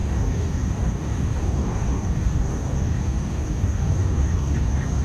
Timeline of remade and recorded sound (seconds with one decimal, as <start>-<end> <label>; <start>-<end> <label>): 0.0-5.0 remade